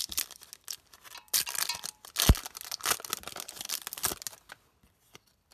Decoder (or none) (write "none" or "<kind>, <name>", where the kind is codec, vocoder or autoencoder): none